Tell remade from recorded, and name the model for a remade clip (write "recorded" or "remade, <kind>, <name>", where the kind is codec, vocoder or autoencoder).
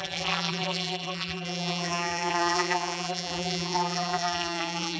remade, vocoder, BigVGAN v2